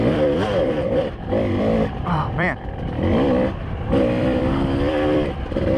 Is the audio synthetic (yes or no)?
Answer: yes